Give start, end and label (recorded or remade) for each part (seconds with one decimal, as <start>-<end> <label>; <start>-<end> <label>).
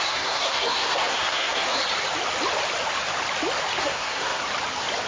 0.0-1.8 remade; 1.8-3.8 recorded; 3.8-4.4 remade; 4.4-5.1 recorded